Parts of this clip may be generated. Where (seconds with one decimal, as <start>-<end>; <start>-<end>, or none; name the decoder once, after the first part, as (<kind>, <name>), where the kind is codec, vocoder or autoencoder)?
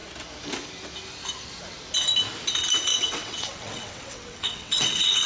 2.9-5.3 (vocoder, WaveNeXt)